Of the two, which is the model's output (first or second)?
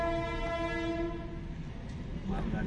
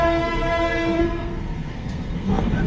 second